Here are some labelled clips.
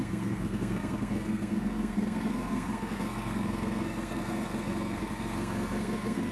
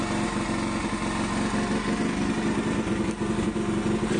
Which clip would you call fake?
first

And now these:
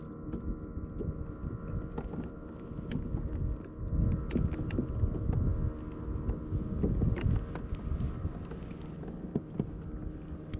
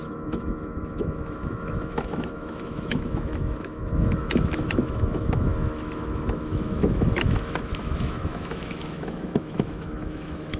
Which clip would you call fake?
second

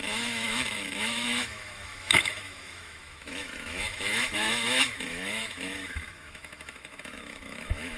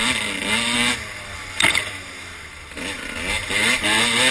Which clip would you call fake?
first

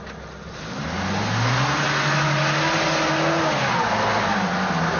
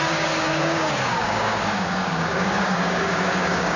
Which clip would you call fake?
second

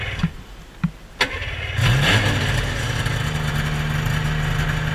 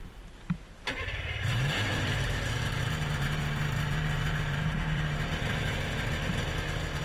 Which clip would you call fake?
second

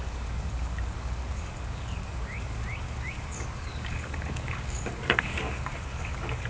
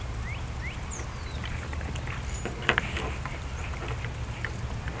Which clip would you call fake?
first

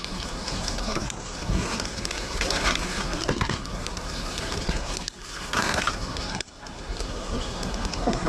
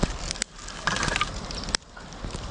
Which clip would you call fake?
first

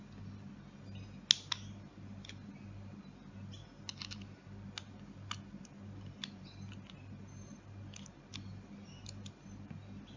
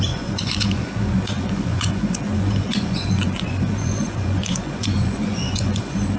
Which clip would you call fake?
second